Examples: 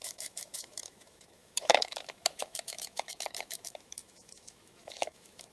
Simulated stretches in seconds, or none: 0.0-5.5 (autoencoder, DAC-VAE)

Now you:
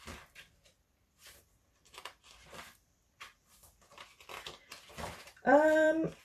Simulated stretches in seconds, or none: 0.0-3.6 (vocoder, BigVGAN v2); 4.6-6.2

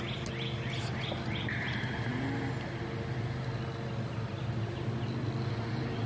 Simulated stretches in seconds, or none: none

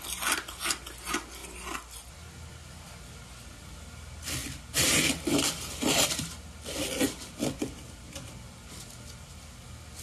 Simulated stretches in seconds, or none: 4.4-10.0 (vocoder, BigVGAN v2)

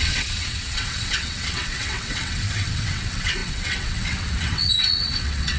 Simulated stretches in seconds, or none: 0.0-5.6 (vocoder, WaveNeXt)

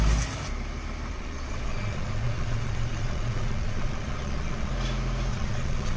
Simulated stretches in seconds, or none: 1.1-4.7 (vocoder, Vocos); 5.3-6.0